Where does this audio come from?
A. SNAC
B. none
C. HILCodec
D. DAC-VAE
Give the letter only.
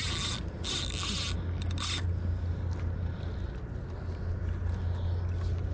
B